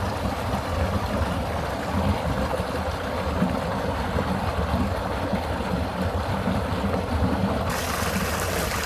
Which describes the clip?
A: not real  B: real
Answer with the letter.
B